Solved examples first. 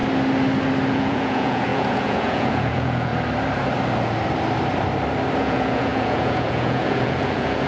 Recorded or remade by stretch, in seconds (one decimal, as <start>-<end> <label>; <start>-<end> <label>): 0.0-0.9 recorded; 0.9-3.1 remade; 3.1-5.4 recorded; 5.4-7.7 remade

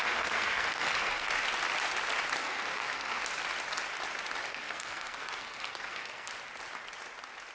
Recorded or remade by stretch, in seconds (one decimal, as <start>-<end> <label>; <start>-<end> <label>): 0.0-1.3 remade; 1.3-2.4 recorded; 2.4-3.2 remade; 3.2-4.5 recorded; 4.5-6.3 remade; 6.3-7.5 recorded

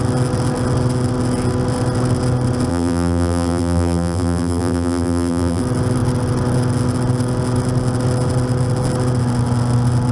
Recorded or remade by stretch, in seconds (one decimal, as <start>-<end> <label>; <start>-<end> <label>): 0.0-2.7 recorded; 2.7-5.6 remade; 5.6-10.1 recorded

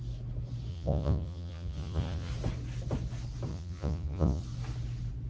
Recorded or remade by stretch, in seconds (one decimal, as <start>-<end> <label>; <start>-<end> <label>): 0.0-0.7 recorded; 0.7-2.3 remade; 2.3-3.5 recorded; 3.5-4.4 remade; 4.4-5.3 recorded

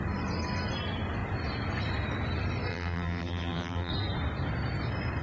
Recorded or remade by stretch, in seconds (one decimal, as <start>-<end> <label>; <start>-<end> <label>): 0.0-2.7 recorded; 2.7-3.9 remade; 3.9-5.2 recorded